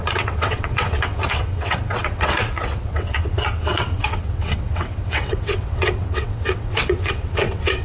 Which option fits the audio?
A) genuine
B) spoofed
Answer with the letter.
B